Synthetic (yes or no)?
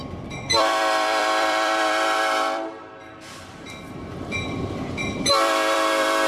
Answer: yes